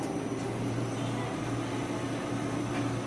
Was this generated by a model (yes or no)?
no